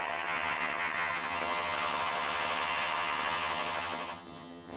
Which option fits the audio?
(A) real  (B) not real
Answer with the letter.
B